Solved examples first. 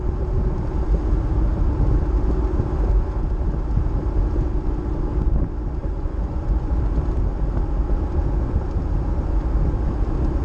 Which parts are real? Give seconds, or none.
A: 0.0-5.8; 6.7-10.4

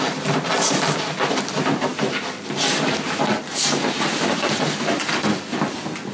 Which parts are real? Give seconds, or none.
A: 0.0-6.1